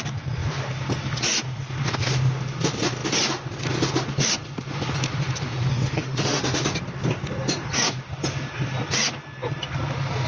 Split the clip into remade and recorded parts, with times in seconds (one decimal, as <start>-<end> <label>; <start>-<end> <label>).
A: 0.0-5.7 recorded; 5.7-6.4 remade; 6.4-10.3 recorded

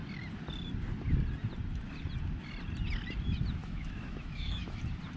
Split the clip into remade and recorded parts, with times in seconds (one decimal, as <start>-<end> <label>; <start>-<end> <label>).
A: 0.0-3.6 recorded; 3.6-4.8 remade; 4.8-5.2 recorded

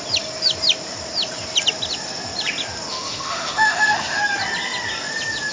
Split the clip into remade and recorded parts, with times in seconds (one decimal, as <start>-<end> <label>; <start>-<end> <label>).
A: 0.0-2.9 recorded; 2.9-4.2 remade; 4.2-5.5 recorded

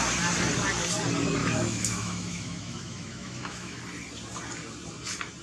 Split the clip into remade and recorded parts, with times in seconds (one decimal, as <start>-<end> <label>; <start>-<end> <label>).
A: 0.0-1.4 recorded; 1.4-3.8 remade; 3.8-5.4 recorded